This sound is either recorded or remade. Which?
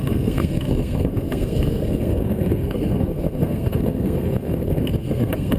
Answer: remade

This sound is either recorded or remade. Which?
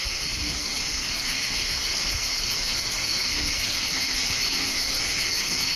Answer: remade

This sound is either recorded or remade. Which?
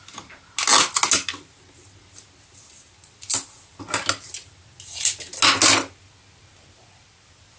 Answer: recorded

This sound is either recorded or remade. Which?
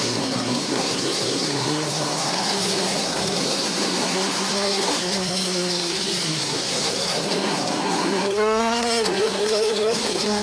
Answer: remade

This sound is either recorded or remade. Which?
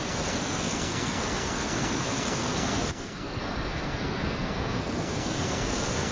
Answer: remade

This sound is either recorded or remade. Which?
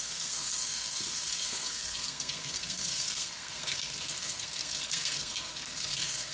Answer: remade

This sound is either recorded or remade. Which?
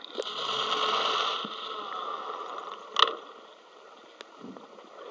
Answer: recorded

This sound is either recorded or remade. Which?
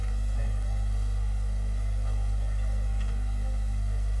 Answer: remade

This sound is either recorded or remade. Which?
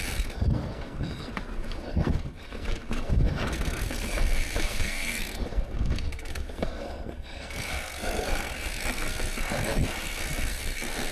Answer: remade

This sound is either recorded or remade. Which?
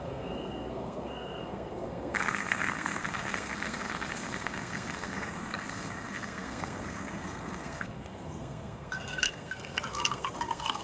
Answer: remade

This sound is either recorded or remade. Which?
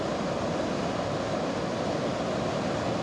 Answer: recorded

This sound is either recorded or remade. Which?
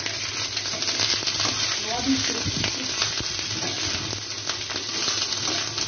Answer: recorded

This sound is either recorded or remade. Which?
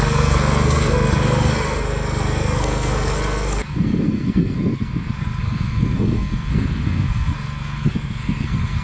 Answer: remade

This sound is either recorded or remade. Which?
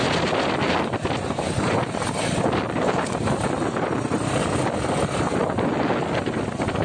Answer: recorded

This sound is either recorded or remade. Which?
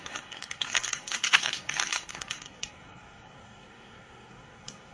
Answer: remade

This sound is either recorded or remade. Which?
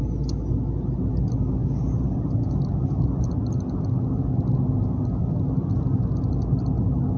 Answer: recorded